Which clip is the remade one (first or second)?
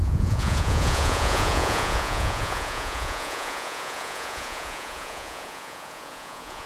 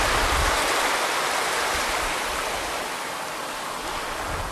first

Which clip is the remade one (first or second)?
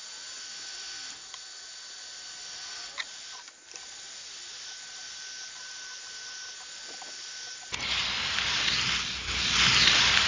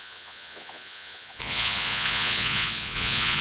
second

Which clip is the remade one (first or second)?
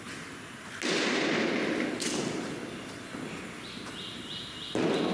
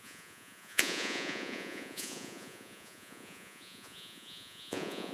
second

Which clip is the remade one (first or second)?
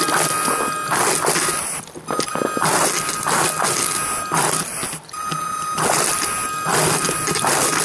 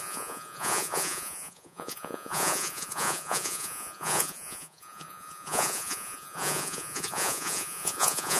second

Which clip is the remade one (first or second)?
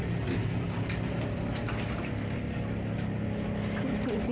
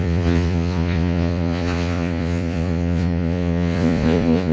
second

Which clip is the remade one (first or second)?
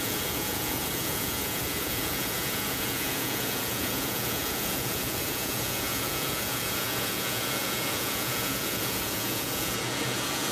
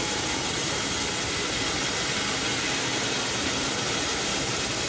first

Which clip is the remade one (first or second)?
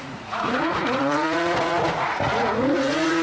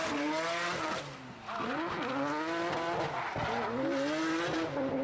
first